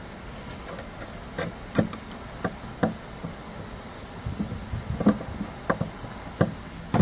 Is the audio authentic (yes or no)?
yes